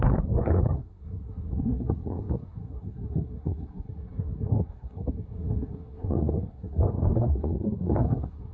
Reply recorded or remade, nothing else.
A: remade